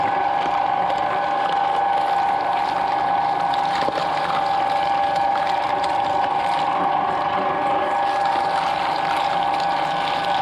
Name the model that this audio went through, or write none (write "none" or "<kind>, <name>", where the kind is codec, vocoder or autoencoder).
none